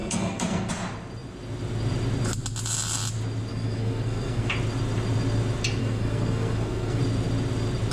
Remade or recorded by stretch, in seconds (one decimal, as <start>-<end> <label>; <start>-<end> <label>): 0.0-0.7 remade; 0.7-3.5 recorded; 3.5-4.5 remade; 4.5-5.8 recorded; 5.8-7.0 remade; 7.0-7.9 recorded